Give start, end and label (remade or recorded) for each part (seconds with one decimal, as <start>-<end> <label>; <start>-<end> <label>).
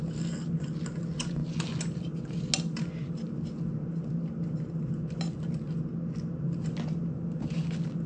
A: 0.0-8.1 recorded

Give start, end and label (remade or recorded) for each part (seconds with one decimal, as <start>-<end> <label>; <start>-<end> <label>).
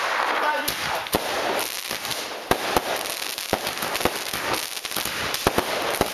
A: 0.0-2.1 remade; 2.1-6.1 recorded